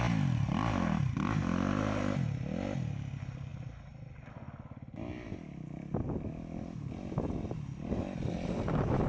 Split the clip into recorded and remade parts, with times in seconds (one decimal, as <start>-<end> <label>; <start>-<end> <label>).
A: 0.0-9.1 recorded